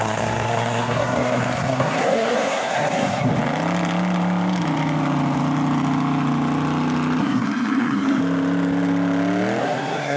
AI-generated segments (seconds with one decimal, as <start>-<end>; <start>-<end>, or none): 0.0-3.3; 7.2-8.2; 9.6-10.2